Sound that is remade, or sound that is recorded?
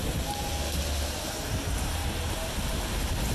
recorded